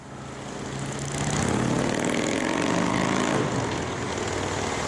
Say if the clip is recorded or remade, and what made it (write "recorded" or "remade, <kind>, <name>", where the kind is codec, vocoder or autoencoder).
recorded